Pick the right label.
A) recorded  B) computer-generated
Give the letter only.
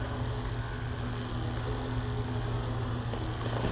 A